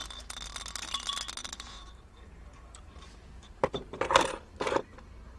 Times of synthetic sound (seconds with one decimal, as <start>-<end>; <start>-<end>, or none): 1.4-4.6